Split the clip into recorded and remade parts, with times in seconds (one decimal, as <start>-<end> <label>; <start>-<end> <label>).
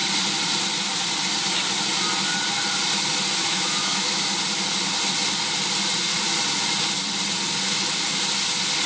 0.0-3.4 recorded; 3.4-4.2 remade; 4.2-8.9 recorded